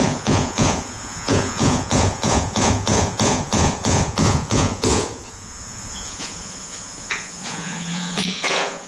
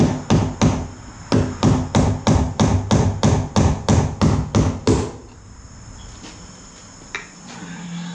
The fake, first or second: first